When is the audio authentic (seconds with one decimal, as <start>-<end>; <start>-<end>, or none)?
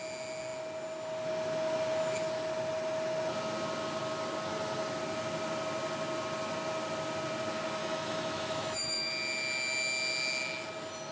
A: 0.0-7.8; 9.1-11.1